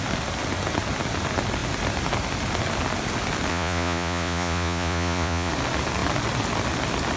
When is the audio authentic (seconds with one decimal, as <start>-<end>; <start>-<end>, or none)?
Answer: 0.0-3.5; 5.5-7.2